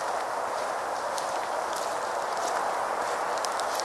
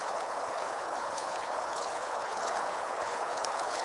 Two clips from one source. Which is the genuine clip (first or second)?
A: first